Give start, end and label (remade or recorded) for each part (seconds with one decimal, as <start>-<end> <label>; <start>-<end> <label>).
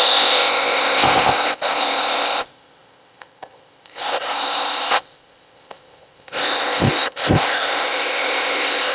0.0-8.9 remade